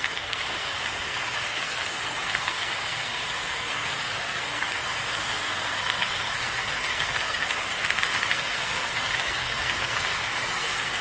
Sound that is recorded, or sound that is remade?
remade